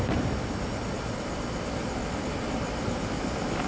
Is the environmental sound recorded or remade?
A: recorded